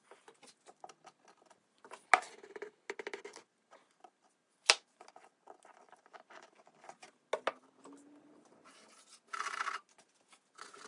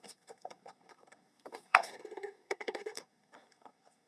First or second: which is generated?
second